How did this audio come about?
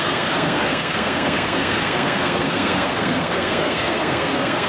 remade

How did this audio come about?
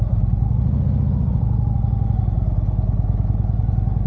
recorded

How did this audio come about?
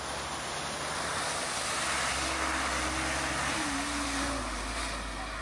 recorded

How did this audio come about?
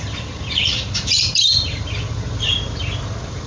remade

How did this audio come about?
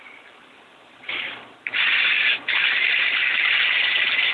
remade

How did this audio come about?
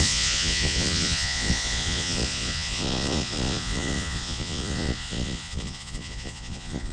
remade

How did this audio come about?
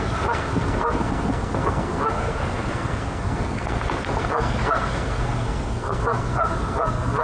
remade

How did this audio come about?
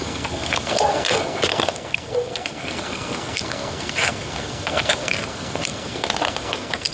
remade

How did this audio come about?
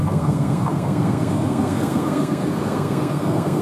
remade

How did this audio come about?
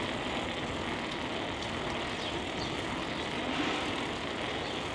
recorded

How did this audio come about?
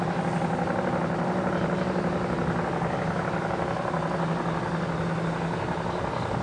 recorded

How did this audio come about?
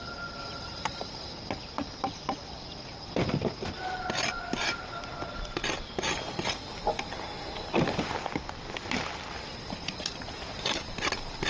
recorded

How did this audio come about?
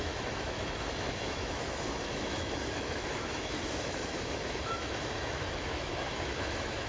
remade